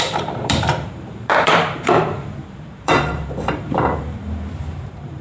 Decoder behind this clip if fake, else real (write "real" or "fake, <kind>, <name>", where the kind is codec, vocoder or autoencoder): fake, vocoder, BigVGAN v2